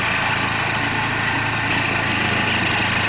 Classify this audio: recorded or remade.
recorded